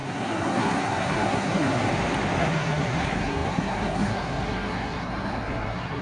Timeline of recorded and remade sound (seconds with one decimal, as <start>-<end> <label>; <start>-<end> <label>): 0.0-1.9 remade; 1.9-2.4 recorded; 2.4-6.0 remade